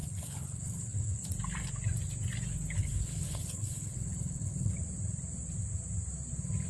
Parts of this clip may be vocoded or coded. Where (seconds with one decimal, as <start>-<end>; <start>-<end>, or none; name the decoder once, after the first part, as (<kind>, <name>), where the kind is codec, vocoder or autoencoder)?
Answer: 0.0-1.3 (codec, HILCodec); 2.8-4.7